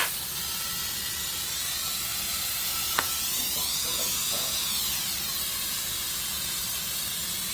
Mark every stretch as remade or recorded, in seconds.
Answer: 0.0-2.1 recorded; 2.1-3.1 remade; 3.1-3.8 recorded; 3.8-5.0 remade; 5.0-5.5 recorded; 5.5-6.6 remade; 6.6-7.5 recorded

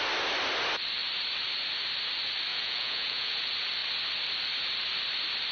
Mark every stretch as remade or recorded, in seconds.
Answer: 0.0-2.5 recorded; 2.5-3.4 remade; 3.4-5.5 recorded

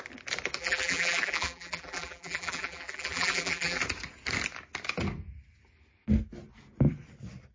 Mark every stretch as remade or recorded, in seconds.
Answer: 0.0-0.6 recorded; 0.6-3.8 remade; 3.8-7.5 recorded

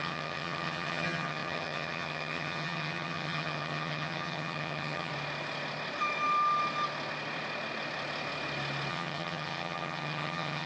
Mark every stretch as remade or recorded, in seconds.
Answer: 0.0-5.1 remade; 5.1-8.9 recorded; 8.9-10.7 remade

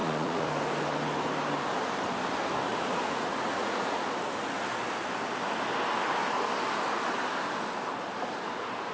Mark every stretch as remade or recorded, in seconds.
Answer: 0.0-0.5 remade; 0.5-2.7 recorded; 2.7-4.0 remade; 4.0-8.9 recorded

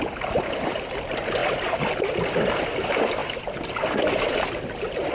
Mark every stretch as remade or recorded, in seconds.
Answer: 0.0-5.1 recorded